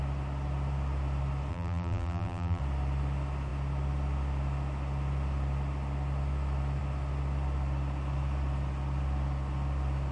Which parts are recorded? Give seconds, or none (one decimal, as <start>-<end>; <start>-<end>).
0.0-1.5; 2.6-10.1